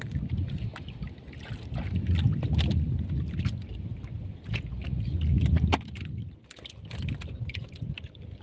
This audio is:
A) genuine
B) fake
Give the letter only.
A